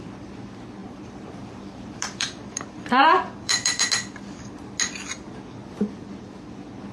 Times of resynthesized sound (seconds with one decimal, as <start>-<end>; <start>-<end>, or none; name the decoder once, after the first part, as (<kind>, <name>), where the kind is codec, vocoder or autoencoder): 0.8-3.9 (vocoder, BigVGAN v2)